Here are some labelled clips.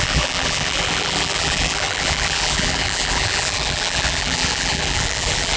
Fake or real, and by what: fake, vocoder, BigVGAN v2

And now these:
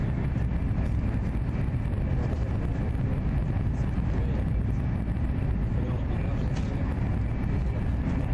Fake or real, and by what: real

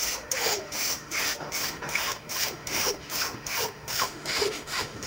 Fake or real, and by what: fake, autoencoder, DAC-VAE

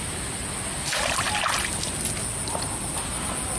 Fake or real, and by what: real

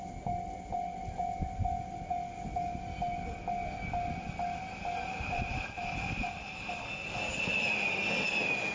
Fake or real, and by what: real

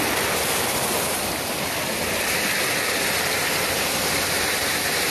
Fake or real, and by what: real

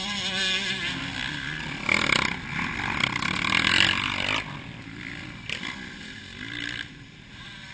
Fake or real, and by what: fake, vocoder, BigVGAN v2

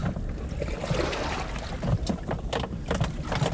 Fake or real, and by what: real